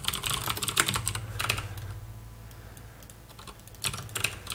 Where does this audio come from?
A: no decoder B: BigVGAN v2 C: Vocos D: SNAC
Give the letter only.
A